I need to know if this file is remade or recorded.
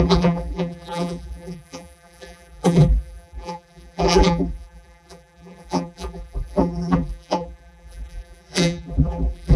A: remade